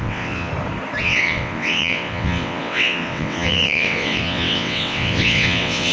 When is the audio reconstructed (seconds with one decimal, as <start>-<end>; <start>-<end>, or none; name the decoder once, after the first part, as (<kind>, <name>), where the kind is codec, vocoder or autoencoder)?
0.0-0.5 (vocoder, WaveNeXt); 1.0-5.9